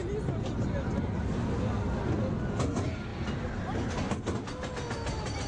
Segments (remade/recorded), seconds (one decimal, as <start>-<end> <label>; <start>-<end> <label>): 0.0-5.5 recorded